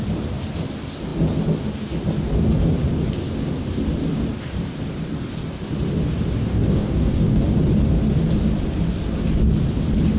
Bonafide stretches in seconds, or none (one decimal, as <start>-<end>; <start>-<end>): 0.0-6.5; 7.4-10.2